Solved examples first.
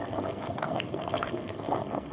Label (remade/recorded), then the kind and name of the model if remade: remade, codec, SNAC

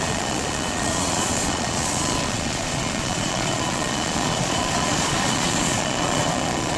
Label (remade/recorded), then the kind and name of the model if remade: remade, vocoder, Vocos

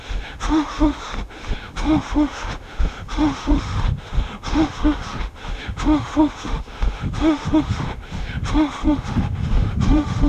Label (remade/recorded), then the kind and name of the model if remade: remade, autoencoder, DAC-VAE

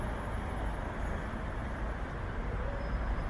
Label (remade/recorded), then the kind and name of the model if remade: recorded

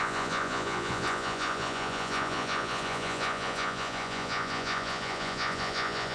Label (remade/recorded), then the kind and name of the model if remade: remade, vocoder, Vocos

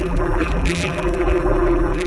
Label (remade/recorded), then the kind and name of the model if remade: remade, vocoder, BigVGAN v2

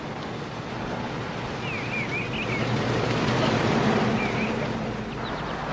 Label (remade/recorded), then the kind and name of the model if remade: recorded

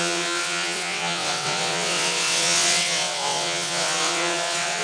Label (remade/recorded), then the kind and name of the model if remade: remade, vocoder, WaveNeXt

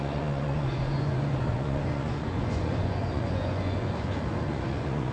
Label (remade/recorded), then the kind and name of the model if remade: remade, vocoder, Vocos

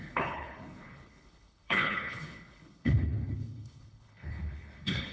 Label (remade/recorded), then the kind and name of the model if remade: remade, codec, HILCodec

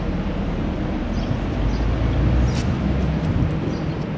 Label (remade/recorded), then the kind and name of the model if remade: recorded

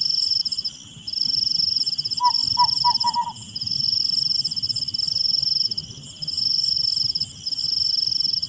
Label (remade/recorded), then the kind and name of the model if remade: recorded